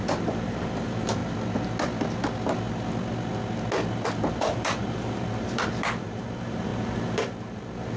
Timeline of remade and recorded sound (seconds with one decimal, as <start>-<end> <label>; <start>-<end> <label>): 0.0-1.2 remade; 1.2-4.3 recorded; 4.3-8.0 remade